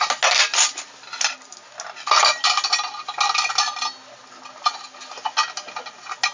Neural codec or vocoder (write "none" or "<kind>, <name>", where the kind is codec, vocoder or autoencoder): none